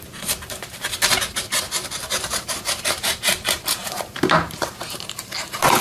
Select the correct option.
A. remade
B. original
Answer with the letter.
A